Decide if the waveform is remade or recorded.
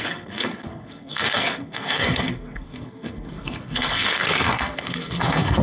remade